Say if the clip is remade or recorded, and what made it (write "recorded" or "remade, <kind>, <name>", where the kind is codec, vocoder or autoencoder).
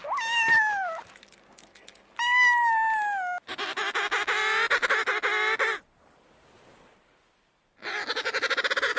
recorded